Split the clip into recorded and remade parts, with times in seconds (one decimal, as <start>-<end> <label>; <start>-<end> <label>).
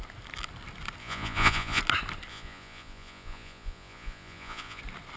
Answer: 0.0-1.0 recorded; 1.0-1.8 remade; 1.8-2.3 recorded; 2.3-4.8 remade; 4.8-5.2 recorded